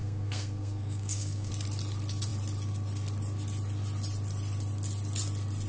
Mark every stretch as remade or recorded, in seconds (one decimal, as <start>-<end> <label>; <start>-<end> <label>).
0.0-1.5 remade; 1.5-5.7 recorded